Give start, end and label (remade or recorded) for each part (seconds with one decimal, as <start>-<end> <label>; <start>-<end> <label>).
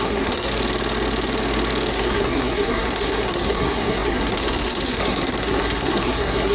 0.0-0.5 remade; 0.5-1.9 recorded; 1.9-6.5 remade